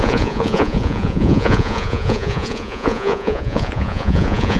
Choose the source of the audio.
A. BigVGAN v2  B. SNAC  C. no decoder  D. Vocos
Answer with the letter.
D